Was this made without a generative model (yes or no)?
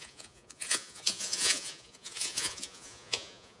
no